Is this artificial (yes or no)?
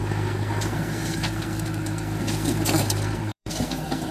yes